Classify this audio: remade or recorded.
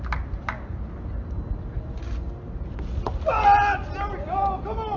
recorded